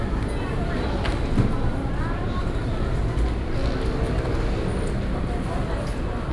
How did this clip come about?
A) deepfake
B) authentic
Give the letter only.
B